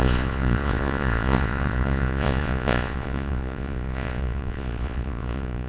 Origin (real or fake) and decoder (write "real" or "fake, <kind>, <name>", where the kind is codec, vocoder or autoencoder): fake, vocoder, Vocos